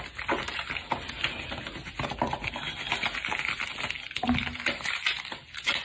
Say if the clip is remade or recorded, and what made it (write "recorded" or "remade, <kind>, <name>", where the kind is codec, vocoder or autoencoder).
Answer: recorded